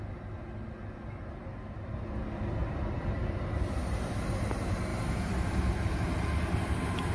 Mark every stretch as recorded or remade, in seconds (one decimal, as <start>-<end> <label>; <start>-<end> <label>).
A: 0.0-2.6 recorded; 2.6-3.2 remade; 3.2-4.9 recorded; 4.9-6.0 remade; 6.0-7.1 recorded

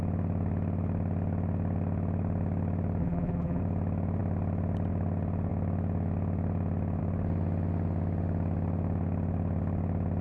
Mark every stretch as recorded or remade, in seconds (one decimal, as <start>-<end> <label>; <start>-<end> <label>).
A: 0.0-3.0 recorded; 3.0-3.6 remade; 3.6-10.2 recorded

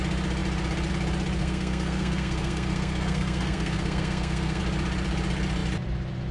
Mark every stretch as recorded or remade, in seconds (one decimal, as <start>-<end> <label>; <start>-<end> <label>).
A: 0.0-1.4 recorded; 1.4-4.6 remade; 4.6-6.3 recorded

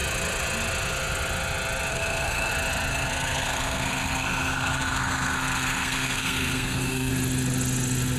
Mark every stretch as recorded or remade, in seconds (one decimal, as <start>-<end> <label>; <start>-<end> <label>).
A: 0.0-1.9 recorded; 1.9-2.5 remade; 2.5-2.9 recorded; 2.9-7.1 remade; 7.1-8.2 recorded

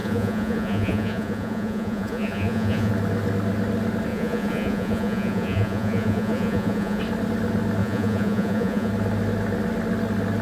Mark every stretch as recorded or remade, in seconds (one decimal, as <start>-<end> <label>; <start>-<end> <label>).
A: 0.0-2.9 remade; 2.9-4.1 recorded; 4.1-7.0 remade; 7.0-7.8 recorded; 7.8-8.9 remade; 8.9-10.4 recorded

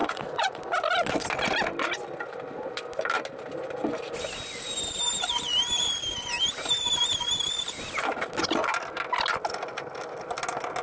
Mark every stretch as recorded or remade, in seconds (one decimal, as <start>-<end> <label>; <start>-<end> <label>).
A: 0.0-0.6 remade; 0.6-10.8 recorded

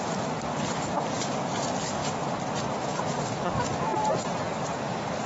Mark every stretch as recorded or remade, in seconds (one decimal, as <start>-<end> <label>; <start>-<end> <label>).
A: 0.0-3.9 recorded; 3.9-5.3 remade

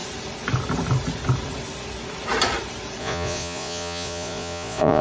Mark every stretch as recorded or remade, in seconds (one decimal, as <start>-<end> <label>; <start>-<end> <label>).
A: 0.0-3.0 recorded; 3.0-5.0 remade